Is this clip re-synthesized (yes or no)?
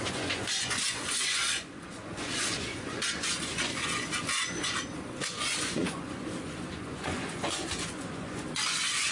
yes